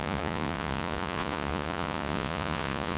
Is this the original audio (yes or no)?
no